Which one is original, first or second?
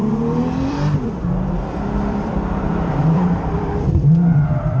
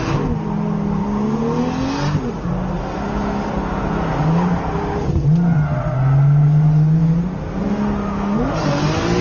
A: second